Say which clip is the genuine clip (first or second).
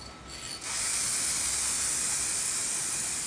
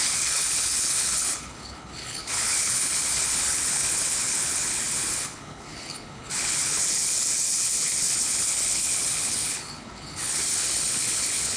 first